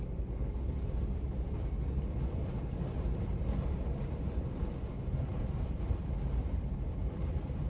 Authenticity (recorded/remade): recorded